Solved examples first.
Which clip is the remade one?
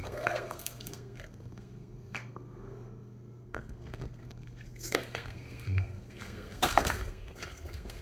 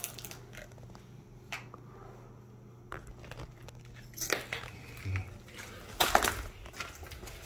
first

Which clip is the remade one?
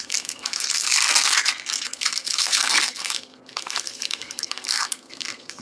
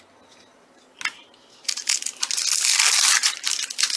first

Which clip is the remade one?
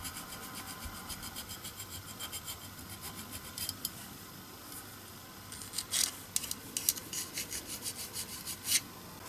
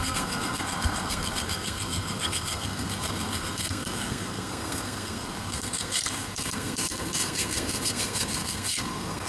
second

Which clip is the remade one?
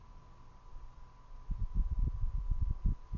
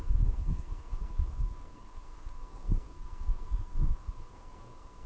second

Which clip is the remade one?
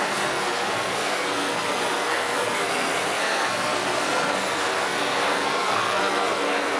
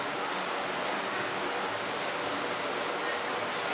first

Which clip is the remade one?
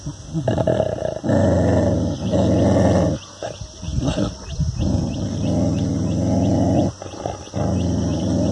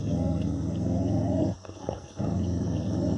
second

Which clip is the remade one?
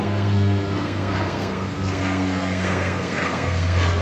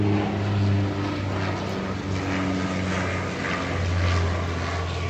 first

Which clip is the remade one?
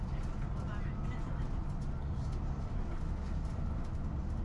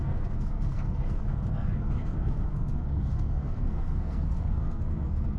second